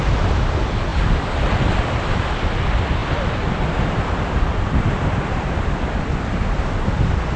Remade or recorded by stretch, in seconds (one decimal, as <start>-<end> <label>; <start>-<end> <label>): 0.0-3.0 recorded; 3.0-6.9 remade; 6.9-7.4 recorded